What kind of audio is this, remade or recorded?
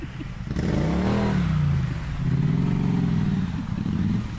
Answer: recorded